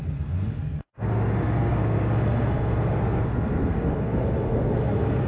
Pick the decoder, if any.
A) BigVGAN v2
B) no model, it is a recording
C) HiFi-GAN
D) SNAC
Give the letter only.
D